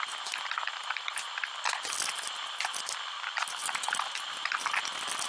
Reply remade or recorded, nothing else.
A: recorded